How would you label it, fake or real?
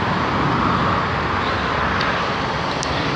real